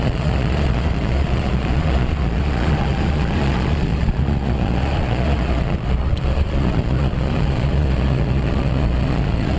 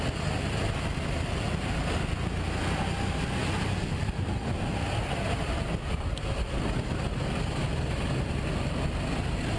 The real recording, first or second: second